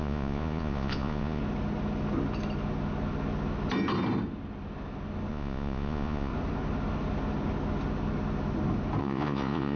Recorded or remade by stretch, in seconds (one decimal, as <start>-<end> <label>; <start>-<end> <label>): 0.0-1.4 remade; 1.4-5.3 recorded; 5.3-6.3 remade; 6.3-9.0 recorded; 9.0-9.8 remade